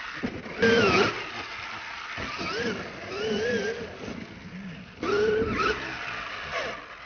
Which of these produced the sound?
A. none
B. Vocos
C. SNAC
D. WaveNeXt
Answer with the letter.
A